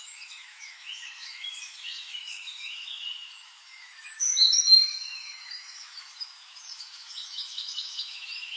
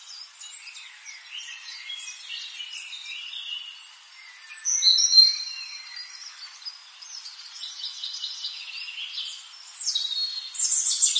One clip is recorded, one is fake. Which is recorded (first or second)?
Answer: second